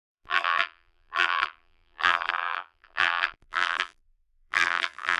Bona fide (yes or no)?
no